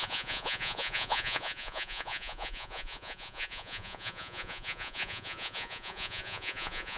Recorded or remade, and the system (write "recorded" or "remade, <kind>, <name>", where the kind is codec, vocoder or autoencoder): remade, vocoder, Vocos